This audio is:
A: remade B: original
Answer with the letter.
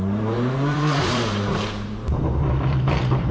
A